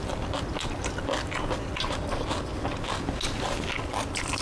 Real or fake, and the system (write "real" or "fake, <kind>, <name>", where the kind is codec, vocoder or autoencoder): real